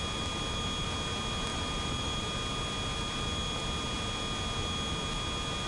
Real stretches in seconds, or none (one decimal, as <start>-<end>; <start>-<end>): 0.0-1.5; 2.2-5.7